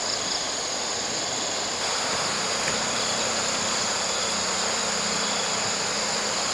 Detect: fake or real real